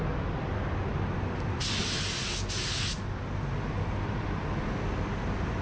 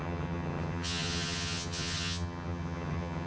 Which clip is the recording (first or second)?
first